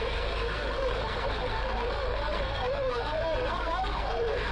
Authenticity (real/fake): fake